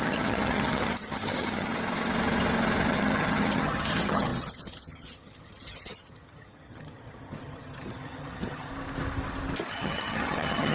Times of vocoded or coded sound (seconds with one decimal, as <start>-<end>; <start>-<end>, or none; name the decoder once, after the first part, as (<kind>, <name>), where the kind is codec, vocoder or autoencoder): 0.0-1.7 (vocoder, HiFi-GAN); 2.9-8.7; 9.7-10.7